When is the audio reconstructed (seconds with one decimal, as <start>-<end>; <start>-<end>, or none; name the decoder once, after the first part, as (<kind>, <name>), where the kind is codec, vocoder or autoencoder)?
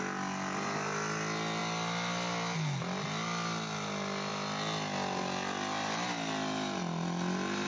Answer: none